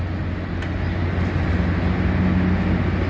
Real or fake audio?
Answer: real